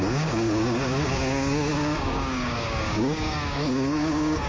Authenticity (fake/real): fake